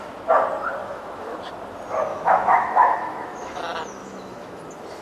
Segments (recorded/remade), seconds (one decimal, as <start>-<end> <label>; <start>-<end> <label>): 0.0-0.8 recorded; 0.8-1.5 remade; 1.5-2.1 recorded; 2.1-3.6 remade; 3.6-4.0 recorded; 4.0-4.6 remade; 4.6-5.0 recorded